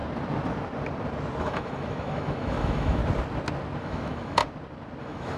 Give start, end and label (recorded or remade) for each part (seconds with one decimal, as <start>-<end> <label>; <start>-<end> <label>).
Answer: 0.0-1.4 recorded; 1.4-3.0 remade; 3.0-3.8 recorded; 3.8-4.4 remade; 4.4-5.0 recorded; 5.0-5.4 remade